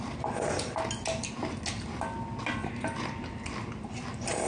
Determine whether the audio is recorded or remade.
recorded